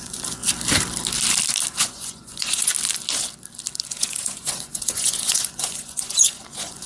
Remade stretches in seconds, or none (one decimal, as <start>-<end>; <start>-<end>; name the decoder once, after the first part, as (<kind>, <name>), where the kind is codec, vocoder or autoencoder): 0.0-0.4 (vocoder, Vocos); 1.8-2.7; 3.9-6.9